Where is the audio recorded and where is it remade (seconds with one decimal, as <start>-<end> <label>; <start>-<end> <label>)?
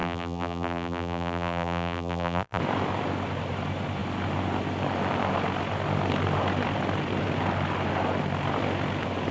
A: 0.0-2.6 remade; 2.6-9.3 recorded